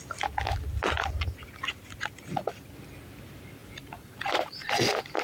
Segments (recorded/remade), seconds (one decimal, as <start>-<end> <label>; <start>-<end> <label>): 0.0-3.6 recorded; 3.6-4.7 remade; 4.7-5.2 recorded